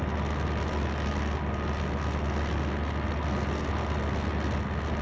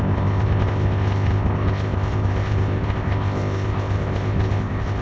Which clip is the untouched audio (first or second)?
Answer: first